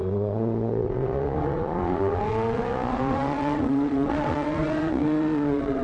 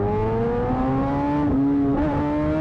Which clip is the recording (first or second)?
second